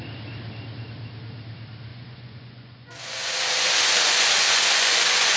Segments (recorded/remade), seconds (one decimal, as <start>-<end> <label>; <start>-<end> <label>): 0.0-1.9 recorded; 1.9-5.4 remade